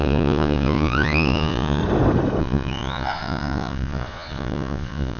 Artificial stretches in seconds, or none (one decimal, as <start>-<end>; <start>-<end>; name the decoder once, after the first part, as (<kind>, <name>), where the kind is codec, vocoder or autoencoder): 0.0-1.8 (vocoder, Vocos); 2.4-5.2

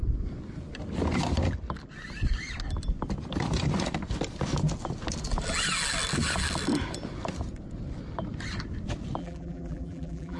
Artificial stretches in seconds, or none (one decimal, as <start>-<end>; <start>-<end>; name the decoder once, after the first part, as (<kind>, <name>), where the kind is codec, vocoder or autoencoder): 9.2-10.4 (vocoder, BigVGAN v2)